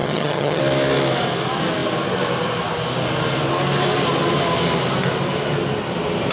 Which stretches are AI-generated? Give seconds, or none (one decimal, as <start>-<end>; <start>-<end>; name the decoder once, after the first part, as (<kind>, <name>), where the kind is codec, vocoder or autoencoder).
0.0-0.6 (vocoder, HiFi-GAN)